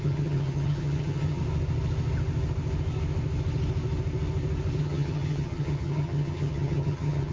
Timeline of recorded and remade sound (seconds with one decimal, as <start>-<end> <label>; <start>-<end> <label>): 0.0-1.4 remade; 1.4-4.8 recorded; 4.8-7.3 remade